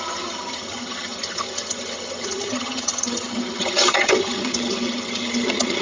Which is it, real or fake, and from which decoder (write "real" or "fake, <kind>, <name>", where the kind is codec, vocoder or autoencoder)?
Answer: fake, vocoder, HiFi-GAN